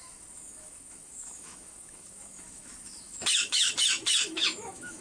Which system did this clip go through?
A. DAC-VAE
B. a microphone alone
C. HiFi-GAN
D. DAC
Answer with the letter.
A